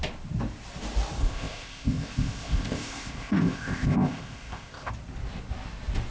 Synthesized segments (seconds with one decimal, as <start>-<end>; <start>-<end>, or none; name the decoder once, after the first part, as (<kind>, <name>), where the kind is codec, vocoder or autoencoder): 1.2-4.9 (codec, ZipCodec)